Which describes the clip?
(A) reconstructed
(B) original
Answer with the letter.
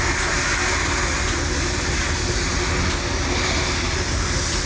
B